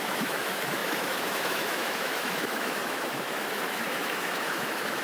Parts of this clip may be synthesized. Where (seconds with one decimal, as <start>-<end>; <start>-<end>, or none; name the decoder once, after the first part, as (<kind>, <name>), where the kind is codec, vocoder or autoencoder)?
0.0-5.0 (autoencoder, DAC-VAE)